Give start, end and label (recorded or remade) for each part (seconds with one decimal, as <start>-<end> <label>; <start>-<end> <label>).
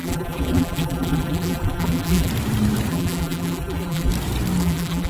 0.0-2.3 remade; 2.3-2.9 recorded; 2.9-4.1 remade; 4.1-4.6 recorded; 4.6-5.1 remade